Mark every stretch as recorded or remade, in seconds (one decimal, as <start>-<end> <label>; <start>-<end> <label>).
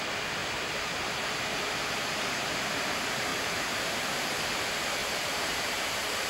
0.0-0.4 recorded; 0.4-1.5 remade; 1.5-3.3 recorded; 3.3-4.3 remade; 4.3-5.0 recorded; 5.0-6.3 remade